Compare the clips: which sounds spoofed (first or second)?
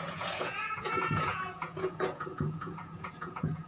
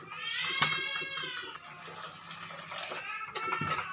first